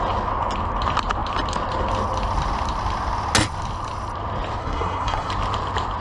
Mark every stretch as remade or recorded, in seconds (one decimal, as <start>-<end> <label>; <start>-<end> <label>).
0.0-4.6 recorded; 4.6-5.3 remade; 5.3-6.0 recorded